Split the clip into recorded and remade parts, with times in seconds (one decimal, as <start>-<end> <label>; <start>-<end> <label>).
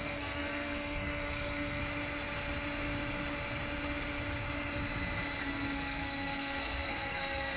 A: 0.0-1.8 remade; 1.8-5.4 recorded; 5.4-7.6 remade